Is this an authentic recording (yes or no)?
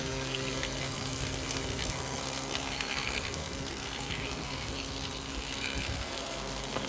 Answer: no